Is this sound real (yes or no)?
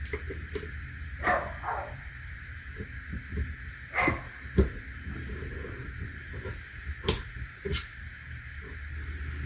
yes